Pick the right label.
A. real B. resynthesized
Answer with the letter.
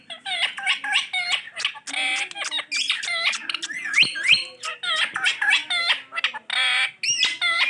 A